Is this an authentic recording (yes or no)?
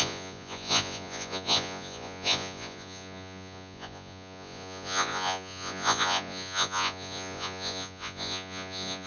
no